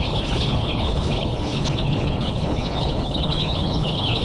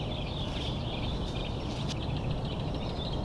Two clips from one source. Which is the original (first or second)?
second